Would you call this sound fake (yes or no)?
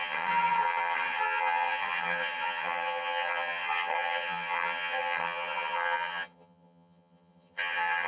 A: yes